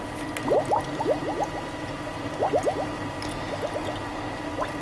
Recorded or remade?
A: recorded